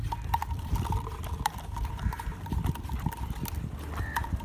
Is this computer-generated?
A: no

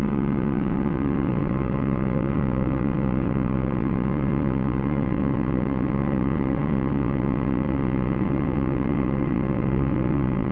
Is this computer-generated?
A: yes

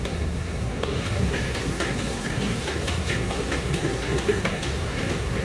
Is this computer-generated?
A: yes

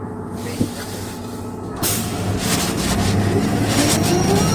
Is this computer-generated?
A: no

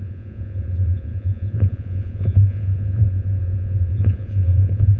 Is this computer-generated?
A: yes